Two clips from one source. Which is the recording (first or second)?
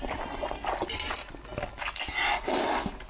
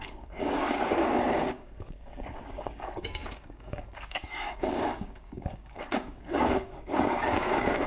first